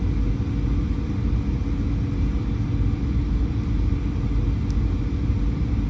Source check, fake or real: real